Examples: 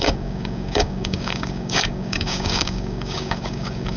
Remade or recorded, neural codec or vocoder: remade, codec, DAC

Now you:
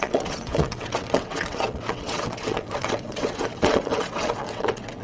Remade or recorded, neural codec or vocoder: remade, vocoder, WaveNeXt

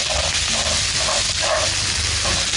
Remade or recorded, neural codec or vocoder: recorded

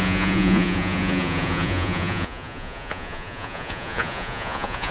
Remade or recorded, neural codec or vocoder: remade, vocoder, Vocos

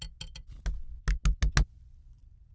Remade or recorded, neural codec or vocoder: recorded